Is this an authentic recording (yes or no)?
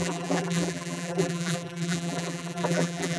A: no